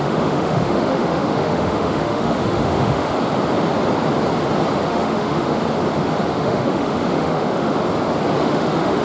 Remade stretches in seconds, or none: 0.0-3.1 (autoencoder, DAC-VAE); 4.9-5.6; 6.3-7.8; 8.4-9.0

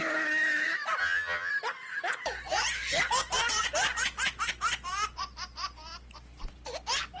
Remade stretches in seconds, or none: 1.0-1.5 (vocoder, HiFi-GAN)

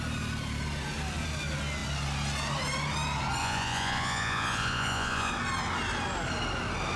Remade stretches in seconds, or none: 3.4-5.3 (vocoder, Vocos)

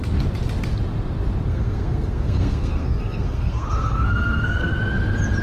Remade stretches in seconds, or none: 1.5-4.7 (codec, SNAC)